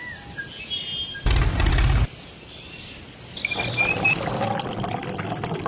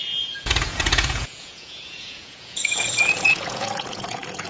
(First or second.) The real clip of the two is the first